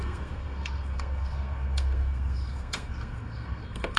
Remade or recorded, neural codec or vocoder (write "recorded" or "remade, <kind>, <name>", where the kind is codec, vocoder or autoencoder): remade, codec, SNAC